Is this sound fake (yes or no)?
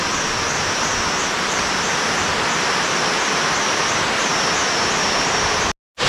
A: no